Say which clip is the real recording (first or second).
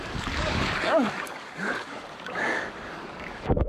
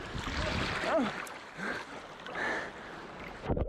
second